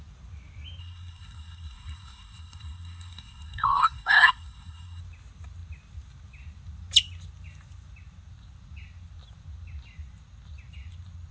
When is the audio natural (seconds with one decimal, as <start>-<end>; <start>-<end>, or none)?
0.0-0.8; 5.0-11.3